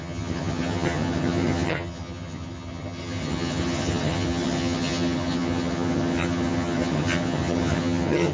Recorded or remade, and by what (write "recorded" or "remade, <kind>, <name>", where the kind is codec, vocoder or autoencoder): remade, vocoder, HiFi-GAN